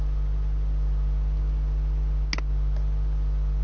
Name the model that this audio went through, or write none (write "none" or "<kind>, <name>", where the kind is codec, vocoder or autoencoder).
none